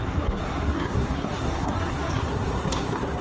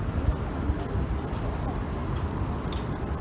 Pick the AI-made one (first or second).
first